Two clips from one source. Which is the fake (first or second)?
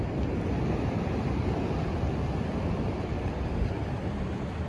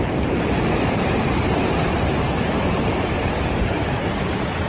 second